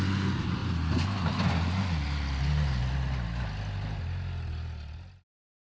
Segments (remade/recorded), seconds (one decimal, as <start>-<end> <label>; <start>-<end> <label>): 0.0-5.8 recorded